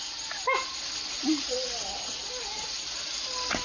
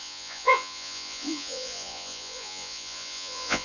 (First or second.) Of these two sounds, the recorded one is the first